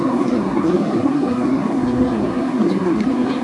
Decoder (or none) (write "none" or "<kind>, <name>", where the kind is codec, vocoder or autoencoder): codec, SNAC